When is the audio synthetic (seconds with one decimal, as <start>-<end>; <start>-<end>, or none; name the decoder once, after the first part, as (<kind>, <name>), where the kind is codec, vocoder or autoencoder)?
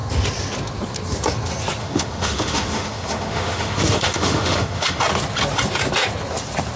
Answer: 1.8-5.0 (autoencoder, DAC-VAE)